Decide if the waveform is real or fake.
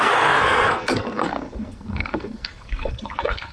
fake